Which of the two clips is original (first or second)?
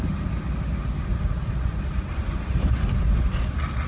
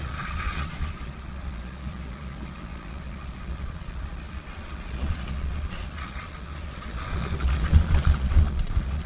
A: first